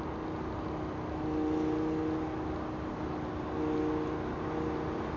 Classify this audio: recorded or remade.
recorded